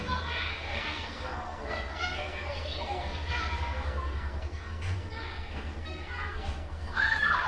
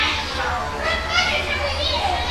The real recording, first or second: second